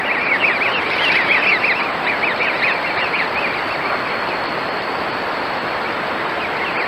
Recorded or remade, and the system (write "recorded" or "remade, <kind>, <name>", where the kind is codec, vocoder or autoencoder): recorded